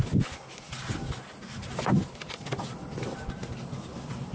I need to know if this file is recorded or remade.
recorded